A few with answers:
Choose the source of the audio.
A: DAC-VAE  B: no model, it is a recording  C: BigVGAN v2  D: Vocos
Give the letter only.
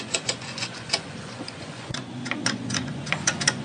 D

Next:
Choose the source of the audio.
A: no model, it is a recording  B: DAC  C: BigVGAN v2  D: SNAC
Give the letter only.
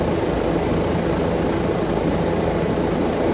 A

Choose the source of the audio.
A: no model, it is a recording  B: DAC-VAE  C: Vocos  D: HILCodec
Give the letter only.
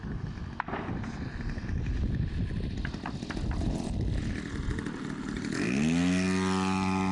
A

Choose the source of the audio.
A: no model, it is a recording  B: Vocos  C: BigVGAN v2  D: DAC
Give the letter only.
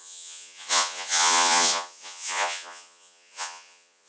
B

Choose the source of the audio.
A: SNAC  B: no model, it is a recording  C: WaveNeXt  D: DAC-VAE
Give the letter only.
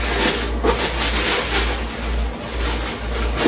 B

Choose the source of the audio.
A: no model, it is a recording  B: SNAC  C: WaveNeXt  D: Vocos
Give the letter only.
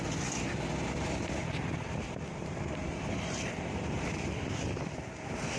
A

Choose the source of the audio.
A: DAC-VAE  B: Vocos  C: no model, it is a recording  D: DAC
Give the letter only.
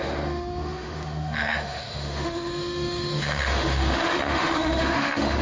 A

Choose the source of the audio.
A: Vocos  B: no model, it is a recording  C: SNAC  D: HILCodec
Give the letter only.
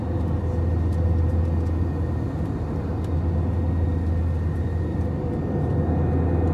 B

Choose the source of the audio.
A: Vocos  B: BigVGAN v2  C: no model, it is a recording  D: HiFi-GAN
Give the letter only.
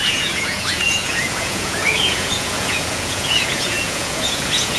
A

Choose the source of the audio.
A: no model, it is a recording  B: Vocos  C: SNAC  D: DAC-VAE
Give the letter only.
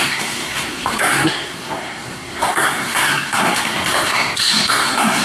C